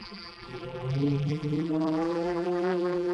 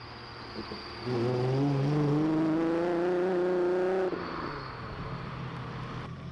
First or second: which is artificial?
first